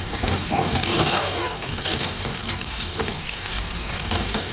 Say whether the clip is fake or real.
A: fake